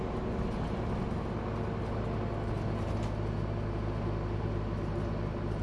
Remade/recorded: recorded